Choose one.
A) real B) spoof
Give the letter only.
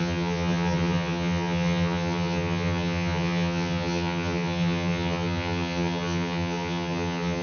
B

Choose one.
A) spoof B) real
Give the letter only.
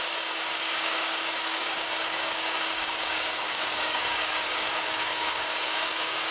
A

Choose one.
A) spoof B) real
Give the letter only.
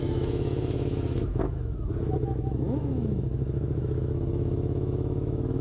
A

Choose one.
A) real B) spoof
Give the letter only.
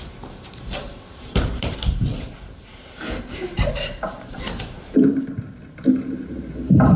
B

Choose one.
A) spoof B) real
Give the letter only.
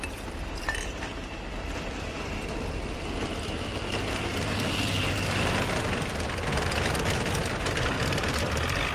B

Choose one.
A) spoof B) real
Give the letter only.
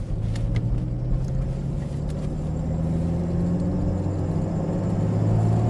B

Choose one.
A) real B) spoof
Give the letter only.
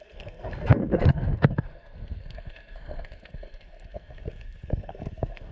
B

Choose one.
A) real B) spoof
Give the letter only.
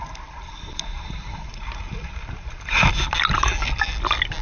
A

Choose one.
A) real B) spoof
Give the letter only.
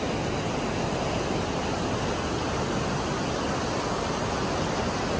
A